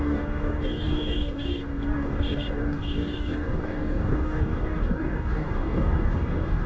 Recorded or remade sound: remade